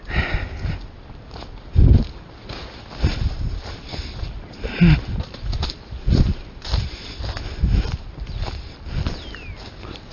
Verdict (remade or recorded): recorded